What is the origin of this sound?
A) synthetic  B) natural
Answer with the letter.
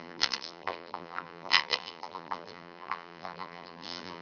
A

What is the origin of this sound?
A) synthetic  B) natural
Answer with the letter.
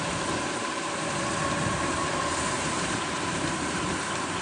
A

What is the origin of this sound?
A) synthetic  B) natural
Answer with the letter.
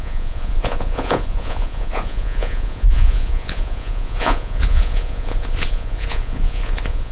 A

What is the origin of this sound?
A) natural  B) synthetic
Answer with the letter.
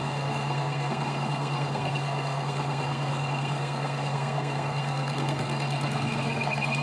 B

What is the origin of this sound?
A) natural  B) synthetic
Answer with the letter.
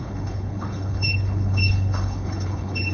B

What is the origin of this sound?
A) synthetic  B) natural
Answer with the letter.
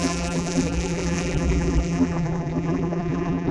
A